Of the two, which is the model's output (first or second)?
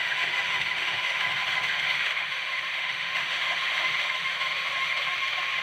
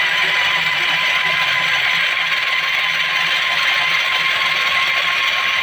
first